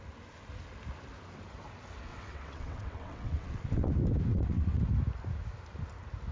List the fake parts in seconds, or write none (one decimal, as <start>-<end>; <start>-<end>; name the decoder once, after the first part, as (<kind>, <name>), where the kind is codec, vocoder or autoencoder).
2.1-3.9 (vocoder, WaveNeXt); 4.3-4.8

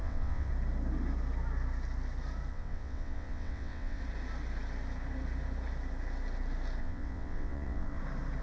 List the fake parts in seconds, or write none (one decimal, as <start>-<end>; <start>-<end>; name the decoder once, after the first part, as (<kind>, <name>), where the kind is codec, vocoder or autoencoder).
0.0-0.5 (vocoder, WaveNeXt); 2.5-4.0; 6.8-8.0